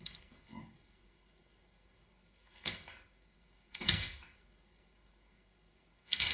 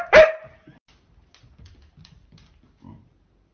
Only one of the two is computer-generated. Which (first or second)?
first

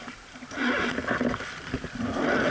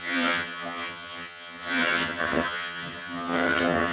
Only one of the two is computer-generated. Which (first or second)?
second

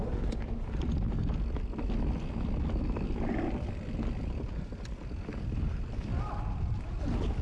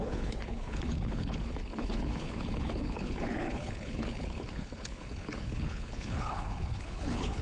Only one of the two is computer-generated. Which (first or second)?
second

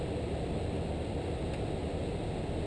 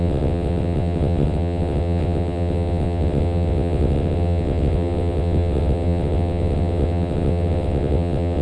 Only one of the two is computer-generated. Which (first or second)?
second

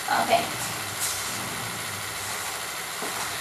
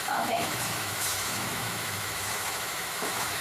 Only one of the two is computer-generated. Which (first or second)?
second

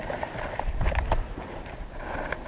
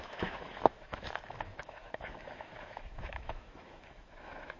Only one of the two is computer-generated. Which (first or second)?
second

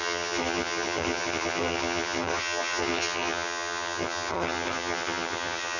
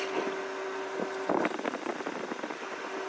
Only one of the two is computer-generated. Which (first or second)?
first